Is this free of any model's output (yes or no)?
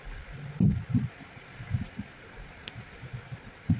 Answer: yes